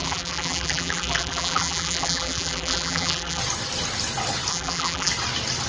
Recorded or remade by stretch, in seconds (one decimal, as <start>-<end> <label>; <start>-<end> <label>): 0.0-3.4 remade; 3.4-4.5 recorded; 4.5-5.1 remade; 5.1-5.7 recorded